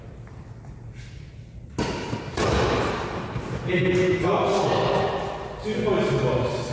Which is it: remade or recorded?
recorded